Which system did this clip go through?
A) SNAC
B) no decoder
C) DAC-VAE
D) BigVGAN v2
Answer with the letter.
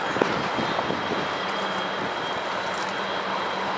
B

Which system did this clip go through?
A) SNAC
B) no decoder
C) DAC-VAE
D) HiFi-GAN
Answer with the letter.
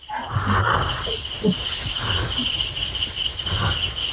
B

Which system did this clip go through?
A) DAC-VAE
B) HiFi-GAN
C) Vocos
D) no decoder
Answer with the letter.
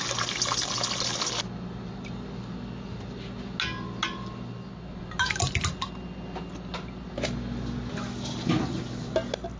D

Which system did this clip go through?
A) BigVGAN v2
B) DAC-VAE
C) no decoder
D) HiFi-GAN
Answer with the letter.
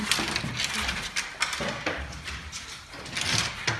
C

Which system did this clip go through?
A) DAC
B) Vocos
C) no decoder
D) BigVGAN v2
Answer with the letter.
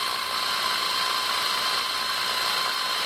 C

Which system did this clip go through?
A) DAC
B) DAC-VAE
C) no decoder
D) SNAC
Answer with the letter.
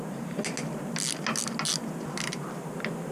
C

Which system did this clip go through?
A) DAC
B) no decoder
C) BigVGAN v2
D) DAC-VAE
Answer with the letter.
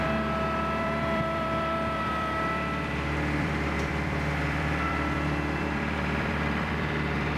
C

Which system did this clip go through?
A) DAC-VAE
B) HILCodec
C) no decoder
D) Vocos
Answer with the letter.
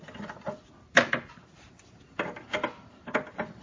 C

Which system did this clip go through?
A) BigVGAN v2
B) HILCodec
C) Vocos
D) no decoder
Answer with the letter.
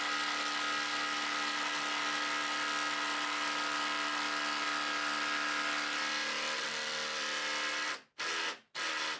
D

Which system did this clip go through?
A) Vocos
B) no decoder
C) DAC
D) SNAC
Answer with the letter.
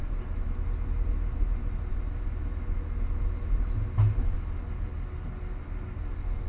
B